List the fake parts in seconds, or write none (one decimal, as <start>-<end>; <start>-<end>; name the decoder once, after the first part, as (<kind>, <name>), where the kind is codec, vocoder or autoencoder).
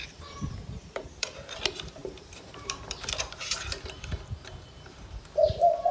0.0-5.9 (vocoder, BigVGAN v2)